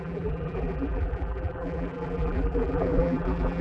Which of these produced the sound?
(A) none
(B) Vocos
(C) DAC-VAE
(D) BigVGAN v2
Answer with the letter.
D